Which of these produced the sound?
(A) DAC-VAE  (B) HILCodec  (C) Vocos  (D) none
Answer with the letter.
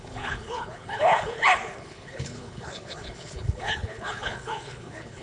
B